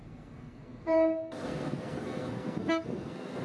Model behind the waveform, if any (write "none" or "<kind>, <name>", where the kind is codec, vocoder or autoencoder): codec, SNAC